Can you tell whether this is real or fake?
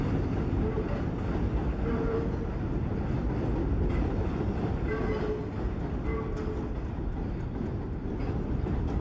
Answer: real